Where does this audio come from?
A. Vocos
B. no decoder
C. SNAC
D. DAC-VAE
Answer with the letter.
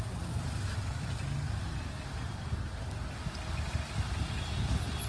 B